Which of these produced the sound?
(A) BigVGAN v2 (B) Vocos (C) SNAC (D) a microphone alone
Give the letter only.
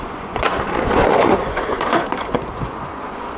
B